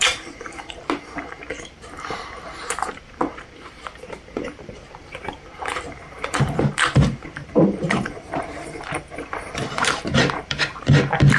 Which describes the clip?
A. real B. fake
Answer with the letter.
B